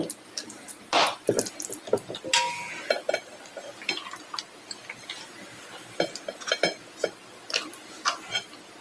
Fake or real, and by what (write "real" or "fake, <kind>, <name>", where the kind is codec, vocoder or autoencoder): real